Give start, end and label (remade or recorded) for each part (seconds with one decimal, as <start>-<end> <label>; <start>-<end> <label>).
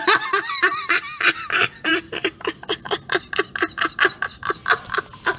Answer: 0.0-5.4 recorded